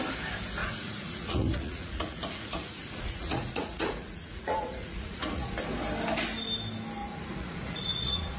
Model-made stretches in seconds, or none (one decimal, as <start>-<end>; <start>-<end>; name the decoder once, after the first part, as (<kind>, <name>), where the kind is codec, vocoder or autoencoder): 0.6-5.5 (vocoder, Vocos); 7.0-8.4